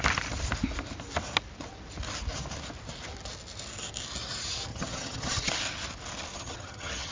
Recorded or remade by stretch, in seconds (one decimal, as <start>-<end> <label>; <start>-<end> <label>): 0.0-4.7 recorded; 4.7-5.5 remade; 5.5-6.3 recorded; 6.3-7.1 remade